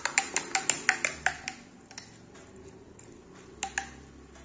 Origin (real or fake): real